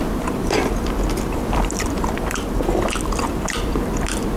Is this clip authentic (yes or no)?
no